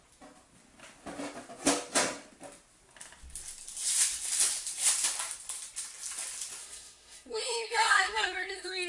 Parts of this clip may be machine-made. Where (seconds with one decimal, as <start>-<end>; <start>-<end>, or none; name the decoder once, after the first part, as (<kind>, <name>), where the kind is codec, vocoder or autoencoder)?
6.6-8.9 (codec, SNAC)